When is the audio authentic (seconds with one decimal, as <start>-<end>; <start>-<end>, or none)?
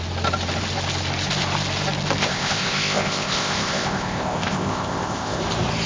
0.0-2.2; 5.4-5.9